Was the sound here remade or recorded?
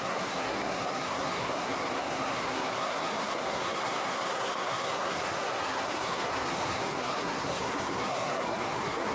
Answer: remade